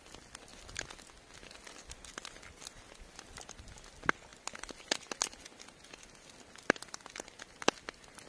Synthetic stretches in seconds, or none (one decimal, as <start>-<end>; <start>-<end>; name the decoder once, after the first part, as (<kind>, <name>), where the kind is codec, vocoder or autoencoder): none